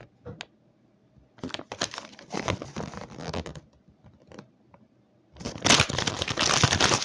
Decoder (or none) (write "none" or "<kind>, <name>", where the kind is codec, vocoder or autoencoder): none